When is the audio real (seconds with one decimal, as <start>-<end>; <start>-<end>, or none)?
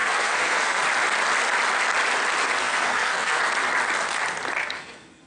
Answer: 0.8-2.6; 3.4-4.6